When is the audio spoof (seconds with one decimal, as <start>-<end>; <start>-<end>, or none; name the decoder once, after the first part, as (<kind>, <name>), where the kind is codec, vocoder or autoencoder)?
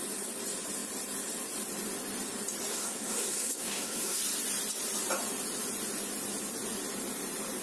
2.7-4.2 (codec, SNAC)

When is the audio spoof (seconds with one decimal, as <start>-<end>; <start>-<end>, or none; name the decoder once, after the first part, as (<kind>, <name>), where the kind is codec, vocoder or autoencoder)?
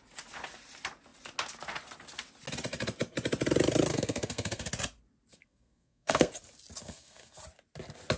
3.9-4.7 (codec, SNAC); 5.3-6.3; 6.8-7.4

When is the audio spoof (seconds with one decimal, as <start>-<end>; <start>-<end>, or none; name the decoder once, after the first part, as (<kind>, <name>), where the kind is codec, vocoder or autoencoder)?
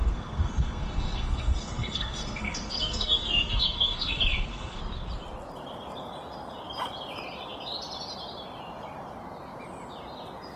0.0-4.8 (codec, SNAC)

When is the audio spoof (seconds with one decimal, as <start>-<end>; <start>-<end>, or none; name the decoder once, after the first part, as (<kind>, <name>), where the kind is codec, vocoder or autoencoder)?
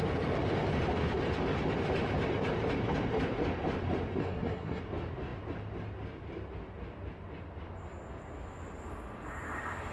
4.2-4.8 (codec, SNAC)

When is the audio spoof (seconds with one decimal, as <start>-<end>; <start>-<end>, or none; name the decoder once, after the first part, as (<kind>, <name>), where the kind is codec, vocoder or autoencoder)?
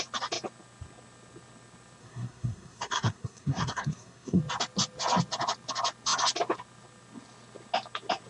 2.0-4.4 (codec, SNAC)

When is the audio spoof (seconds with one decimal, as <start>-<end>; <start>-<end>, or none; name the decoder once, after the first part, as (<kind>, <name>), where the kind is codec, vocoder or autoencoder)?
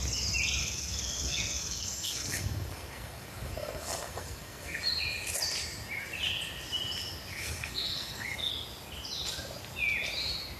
0.6-4.8 (codec, SNAC); 7.3-8.5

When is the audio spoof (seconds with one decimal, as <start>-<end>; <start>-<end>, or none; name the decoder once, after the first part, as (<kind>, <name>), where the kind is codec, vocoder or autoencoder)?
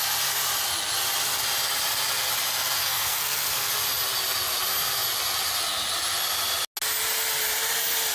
2.8-3.7 (codec, SNAC)